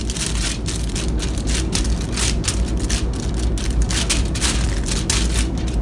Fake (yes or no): no